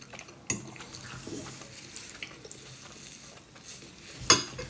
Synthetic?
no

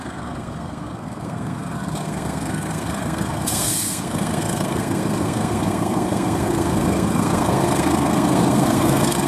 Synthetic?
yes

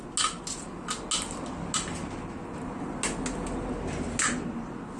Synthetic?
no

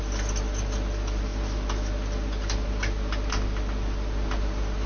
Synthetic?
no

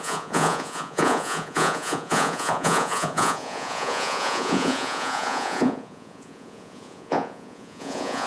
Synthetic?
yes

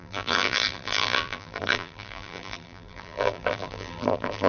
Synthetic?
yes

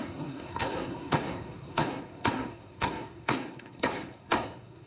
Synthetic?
yes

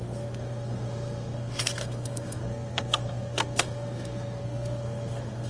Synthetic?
yes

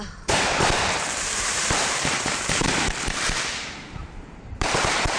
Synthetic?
yes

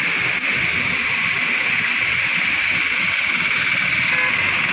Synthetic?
no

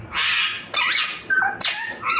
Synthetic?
no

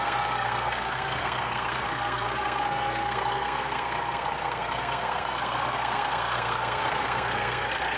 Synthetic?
yes